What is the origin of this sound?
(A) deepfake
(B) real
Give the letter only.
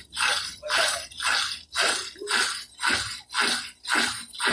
B